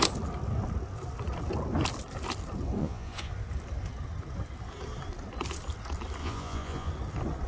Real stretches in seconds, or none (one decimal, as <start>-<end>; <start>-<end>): 0.0-2.8; 3.3-6.2; 6.9-7.5